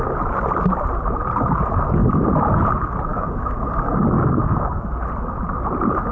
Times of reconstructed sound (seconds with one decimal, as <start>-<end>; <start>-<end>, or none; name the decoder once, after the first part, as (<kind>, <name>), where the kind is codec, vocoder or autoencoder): 3.1-4.8 (codec, DAC)